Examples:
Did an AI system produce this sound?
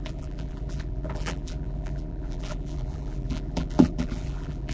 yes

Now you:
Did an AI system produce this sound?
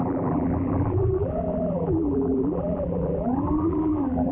yes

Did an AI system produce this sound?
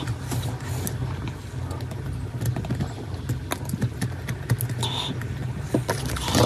no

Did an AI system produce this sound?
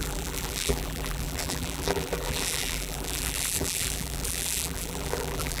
yes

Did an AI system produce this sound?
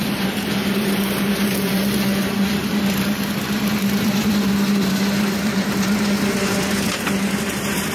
yes